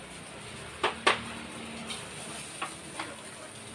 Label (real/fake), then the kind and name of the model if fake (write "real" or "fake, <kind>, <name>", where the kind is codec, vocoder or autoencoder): real